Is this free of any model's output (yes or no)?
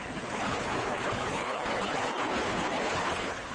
no